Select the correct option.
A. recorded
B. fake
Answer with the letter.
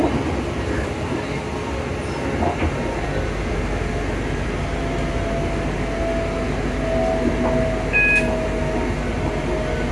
A